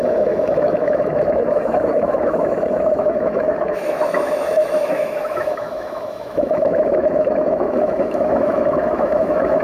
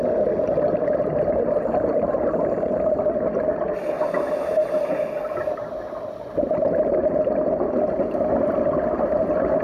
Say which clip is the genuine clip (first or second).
second